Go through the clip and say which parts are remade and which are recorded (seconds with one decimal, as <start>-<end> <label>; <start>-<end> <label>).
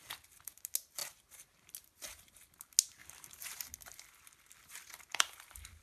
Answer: 0.0-1.0 recorded; 1.0-1.7 remade; 1.7-3.0 recorded; 3.0-3.6 remade; 3.6-5.1 recorded; 5.1-5.8 remade